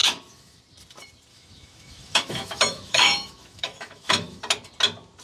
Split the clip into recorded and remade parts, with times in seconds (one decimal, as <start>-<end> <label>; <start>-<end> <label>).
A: 0.0-0.6 remade; 0.6-1.3 recorded; 1.3-4.4 remade; 4.4-5.2 recorded